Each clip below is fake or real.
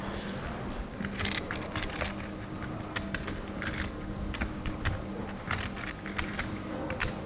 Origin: real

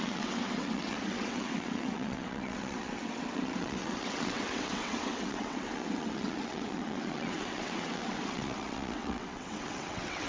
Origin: fake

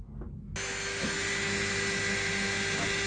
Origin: real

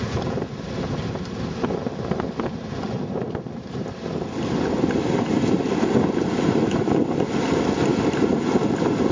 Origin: real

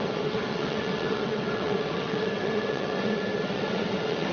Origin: fake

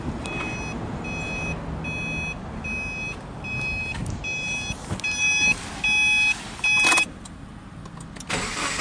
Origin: real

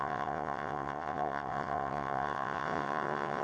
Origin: fake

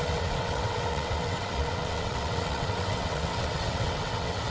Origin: fake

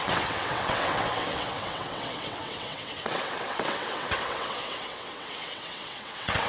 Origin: fake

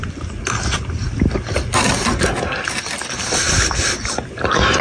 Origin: real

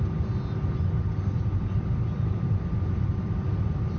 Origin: real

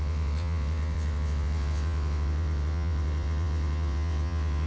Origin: fake